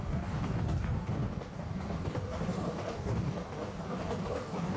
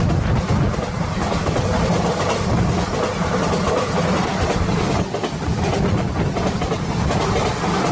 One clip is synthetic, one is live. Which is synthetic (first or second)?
first